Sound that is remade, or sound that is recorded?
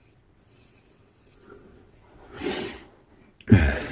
remade